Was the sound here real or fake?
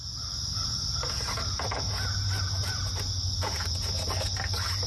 real